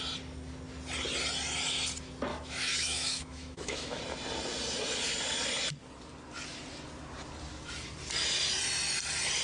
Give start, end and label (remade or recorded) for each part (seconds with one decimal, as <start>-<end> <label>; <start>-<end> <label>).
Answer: 0.0-2.3 recorded; 2.3-4.0 remade; 4.0-9.4 recorded